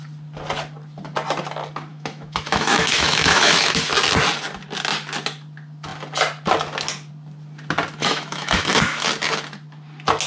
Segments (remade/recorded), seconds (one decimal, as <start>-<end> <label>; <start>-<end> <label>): 0.0-1.9 recorded; 1.9-3.8 remade; 3.8-8.0 recorded; 8.0-9.1 remade; 9.1-10.3 recorded